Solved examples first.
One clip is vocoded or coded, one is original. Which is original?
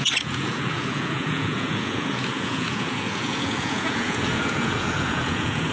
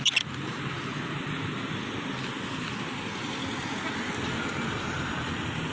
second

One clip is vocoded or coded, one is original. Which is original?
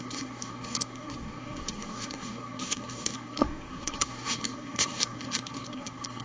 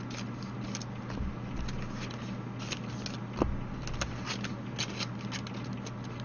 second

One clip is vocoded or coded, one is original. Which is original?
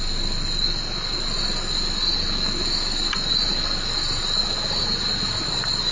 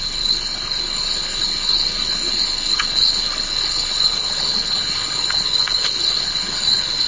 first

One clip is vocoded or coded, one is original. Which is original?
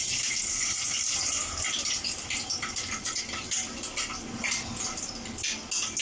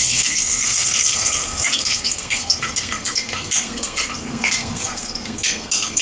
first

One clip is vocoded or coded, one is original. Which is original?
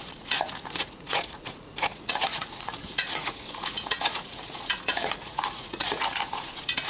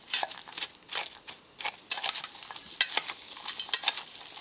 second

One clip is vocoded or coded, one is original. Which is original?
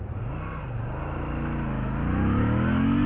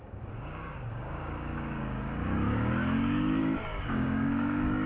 first